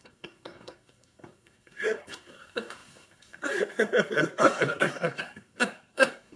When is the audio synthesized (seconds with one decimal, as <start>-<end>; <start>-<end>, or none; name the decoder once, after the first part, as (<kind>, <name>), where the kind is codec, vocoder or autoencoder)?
0.0-6.4 (codec, SNAC)